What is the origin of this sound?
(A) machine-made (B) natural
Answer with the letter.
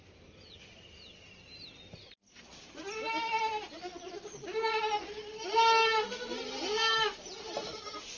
B